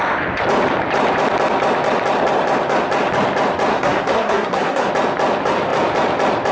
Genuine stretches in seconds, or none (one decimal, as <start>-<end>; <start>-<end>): 0.0-3.7; 4.9-6.5

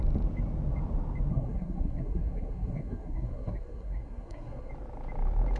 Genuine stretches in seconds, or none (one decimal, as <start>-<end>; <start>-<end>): 0.0-1.3; 4.7-5.6

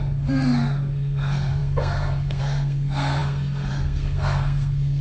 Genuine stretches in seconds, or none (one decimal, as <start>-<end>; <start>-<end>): none

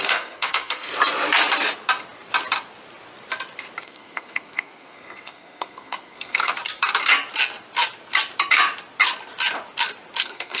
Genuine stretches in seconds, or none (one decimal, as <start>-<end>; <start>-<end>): 0.9-3.8; 6.6-10.2

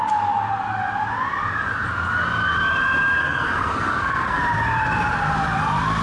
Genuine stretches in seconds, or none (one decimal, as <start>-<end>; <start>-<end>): 0.0-3.2; 4.4-6.0

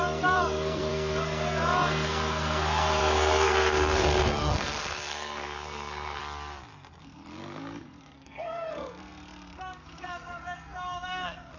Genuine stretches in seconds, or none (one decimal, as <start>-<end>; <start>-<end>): 6.2-7.0